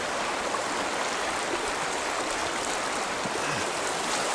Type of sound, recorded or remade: recorded